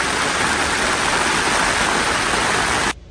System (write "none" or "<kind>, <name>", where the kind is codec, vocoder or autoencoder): none